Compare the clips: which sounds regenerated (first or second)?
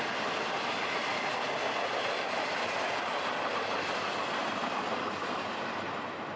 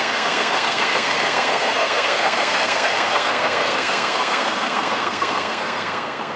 second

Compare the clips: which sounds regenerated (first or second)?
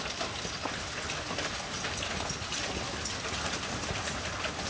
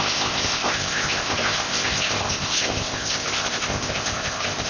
second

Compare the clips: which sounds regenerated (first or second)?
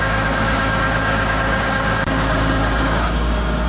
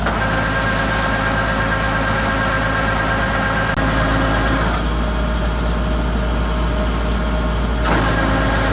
first